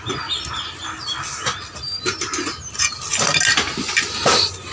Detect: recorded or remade recorded